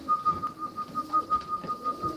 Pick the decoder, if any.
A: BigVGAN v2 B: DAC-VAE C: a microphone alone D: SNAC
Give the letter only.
A